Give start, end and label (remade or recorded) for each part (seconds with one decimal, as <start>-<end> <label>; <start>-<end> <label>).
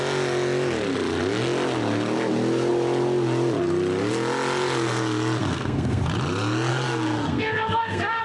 0.0-5.4 recorded; 5.4-6.0 remade; 6.0-6.7 recorded; 6.7-8.2 remade